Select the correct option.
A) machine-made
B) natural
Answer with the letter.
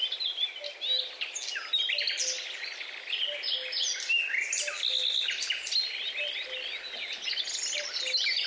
B